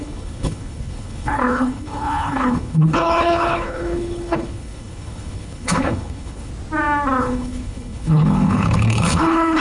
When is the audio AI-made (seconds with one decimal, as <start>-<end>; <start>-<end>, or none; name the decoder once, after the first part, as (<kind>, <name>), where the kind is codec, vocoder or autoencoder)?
0.0-6.5 (codec, HILCodec); 7.2-9.6